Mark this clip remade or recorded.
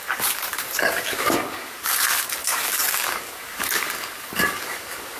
remade